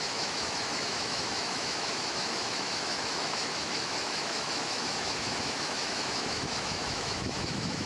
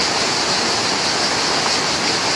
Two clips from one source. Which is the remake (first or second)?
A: first